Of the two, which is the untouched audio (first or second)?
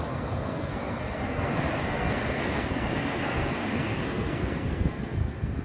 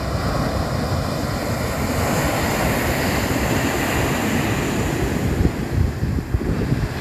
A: second